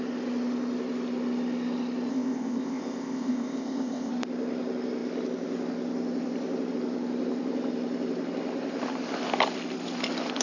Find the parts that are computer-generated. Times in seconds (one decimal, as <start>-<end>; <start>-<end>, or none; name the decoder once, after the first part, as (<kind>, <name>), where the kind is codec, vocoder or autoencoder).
2.1-4.1 (codec, ZipCodec)